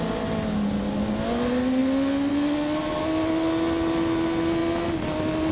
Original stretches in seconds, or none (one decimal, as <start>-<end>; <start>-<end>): 0.0-5.5